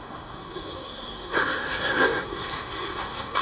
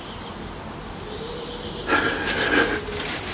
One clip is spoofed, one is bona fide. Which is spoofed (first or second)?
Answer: first